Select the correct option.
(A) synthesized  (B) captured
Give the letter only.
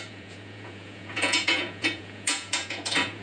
A